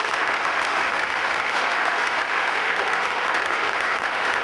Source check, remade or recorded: remade